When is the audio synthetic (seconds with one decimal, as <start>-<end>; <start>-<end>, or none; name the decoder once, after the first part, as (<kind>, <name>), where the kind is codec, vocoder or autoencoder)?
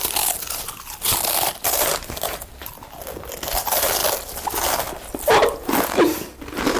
none